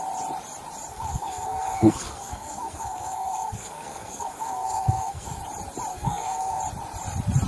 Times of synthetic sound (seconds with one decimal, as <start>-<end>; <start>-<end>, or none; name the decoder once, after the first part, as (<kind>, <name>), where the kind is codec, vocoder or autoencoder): 0.9-5.4 (codec, SNAC); 5.9-6.6